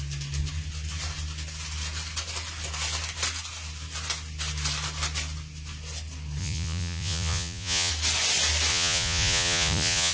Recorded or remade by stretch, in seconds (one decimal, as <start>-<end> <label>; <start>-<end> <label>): 0.0-6.4 recorded; 6.4-7.9 remade; 7.9-8.7 recorded; 8.7-10.1 remade